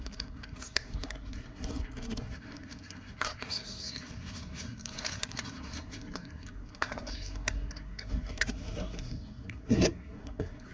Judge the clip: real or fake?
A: fake